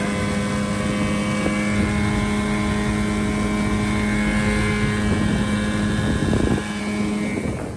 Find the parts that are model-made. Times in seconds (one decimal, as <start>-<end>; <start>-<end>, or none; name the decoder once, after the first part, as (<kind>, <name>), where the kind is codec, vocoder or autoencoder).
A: none

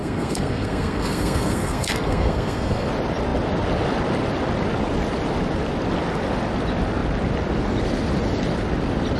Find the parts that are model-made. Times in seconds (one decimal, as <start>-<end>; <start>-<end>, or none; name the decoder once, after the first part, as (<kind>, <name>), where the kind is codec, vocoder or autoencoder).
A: 0.0-2.9 (codec, SNAC)

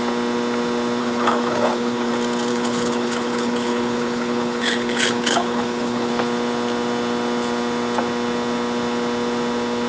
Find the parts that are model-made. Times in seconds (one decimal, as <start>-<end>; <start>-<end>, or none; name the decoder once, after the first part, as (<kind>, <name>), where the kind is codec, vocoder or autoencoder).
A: 1.0-2.1 (codec, HILCodec); 2.5-6.1

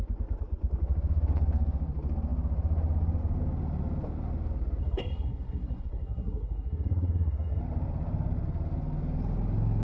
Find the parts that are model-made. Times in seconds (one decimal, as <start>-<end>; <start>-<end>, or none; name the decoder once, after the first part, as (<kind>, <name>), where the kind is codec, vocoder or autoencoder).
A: 4.8-7.6 (codec, SNAC)

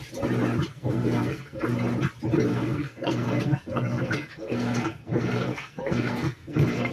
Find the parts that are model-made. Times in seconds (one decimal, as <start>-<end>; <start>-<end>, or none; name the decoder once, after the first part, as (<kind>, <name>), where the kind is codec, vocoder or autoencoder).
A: 0.7-1.6 (codec, SNAC); 2.5-6.9

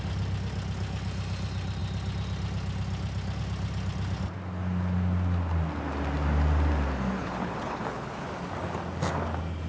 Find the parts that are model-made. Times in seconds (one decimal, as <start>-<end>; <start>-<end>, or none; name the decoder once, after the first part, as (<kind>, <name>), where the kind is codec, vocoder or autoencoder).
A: 7.2-8.2 (codec, HILCodec)